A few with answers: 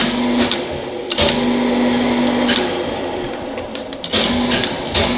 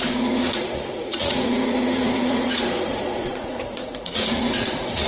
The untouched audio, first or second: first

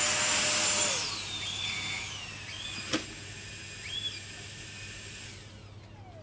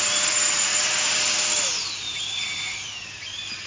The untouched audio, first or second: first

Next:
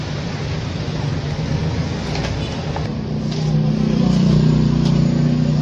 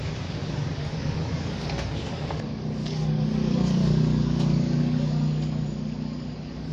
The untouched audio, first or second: first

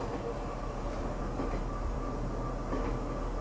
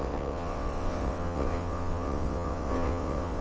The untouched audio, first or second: first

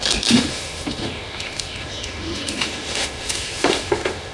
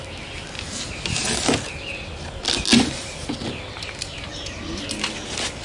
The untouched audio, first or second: second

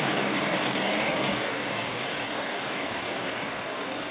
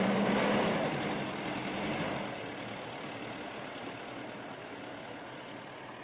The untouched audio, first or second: second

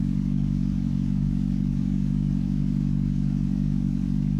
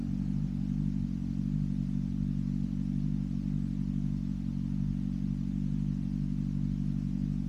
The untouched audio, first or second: second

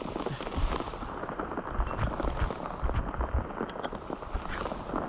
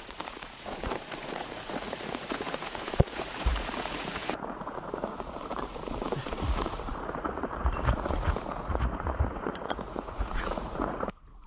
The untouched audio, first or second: first